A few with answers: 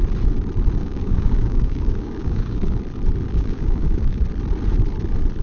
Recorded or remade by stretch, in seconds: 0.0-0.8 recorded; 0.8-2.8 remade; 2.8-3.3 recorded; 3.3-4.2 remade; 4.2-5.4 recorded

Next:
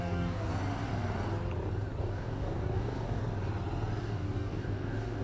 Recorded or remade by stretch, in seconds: 0.0-0.5 remade; 0.5-2.0 recorded; 2.0-3.2 remade; 3.2-4.0 recorded; 4.0-5.2 remade

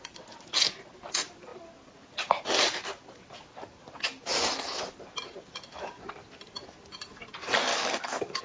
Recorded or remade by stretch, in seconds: 0.0-7.7 recorded; 7.7-8.4 remade